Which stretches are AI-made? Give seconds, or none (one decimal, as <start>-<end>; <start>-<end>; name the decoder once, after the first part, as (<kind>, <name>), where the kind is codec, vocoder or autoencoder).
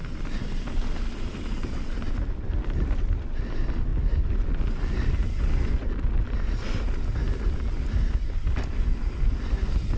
none